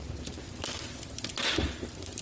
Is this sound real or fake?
real